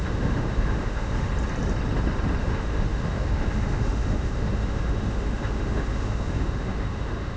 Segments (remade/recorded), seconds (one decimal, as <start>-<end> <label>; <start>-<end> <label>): 0.0-1.3 remade; 1.3-2.4 recorded; 2.4-7.4 remade